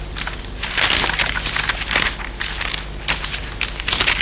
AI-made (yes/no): no